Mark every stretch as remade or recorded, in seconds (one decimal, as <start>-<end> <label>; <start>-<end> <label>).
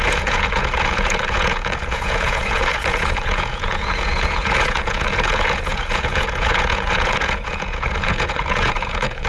0.0-9.3 remade